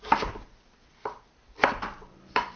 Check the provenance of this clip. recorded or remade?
recorded